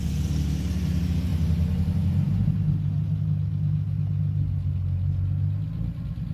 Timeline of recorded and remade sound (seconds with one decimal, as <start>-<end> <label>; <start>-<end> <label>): 0.0-6.3 recorded